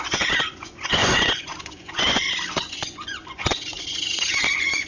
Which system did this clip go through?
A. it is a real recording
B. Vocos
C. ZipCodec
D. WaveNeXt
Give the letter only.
B